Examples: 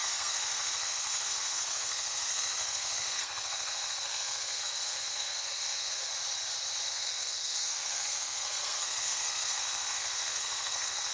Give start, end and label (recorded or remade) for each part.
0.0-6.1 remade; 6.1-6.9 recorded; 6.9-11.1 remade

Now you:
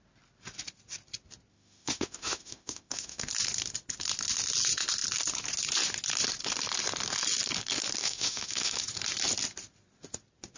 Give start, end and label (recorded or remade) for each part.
0.0-1.5 recorded; 1.5-3.3 remade; 3.3-8.0 recorded; 8.0-8.8 remade; 8.8-10.6 recorded

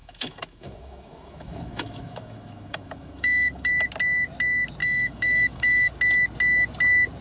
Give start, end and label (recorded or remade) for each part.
0.0-3.7 remade; 3.7-4.8 recorded; 4.8-5.9 remade; 5.9-7.2 recorded